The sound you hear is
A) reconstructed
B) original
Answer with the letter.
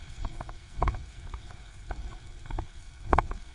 A